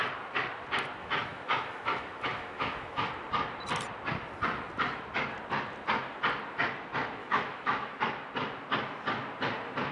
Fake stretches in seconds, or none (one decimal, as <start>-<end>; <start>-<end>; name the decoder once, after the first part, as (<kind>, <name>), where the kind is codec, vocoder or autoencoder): 1.0-3.1 (autoencoder, DAC-VAE); 7.2-8.0